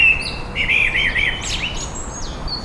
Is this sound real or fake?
real